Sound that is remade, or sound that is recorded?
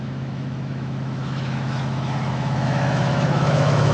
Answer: remade